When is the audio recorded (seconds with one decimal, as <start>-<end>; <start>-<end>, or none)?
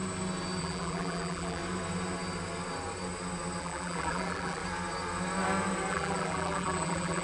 0.0-0.6; 1.6-3.6; 4.6-5.9